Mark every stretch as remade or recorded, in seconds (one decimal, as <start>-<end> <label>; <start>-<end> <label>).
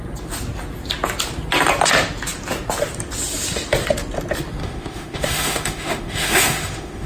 0.0-4.6 recorded; 4.6-7.1 remade